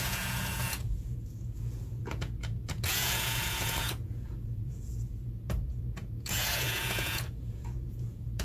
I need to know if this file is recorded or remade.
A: remade